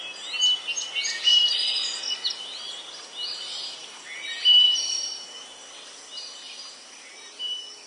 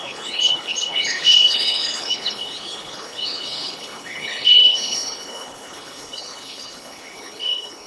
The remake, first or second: second